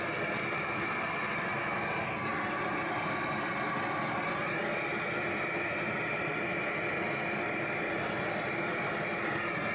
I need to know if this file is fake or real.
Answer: real